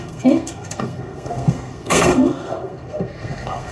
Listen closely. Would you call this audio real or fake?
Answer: fake